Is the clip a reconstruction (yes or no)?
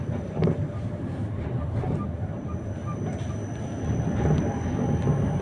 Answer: no